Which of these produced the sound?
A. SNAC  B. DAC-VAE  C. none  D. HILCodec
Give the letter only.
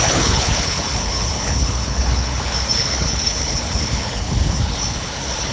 D